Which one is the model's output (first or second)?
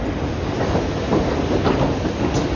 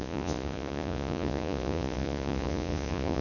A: second